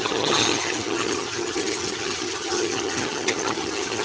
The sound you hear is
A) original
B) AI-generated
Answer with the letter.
B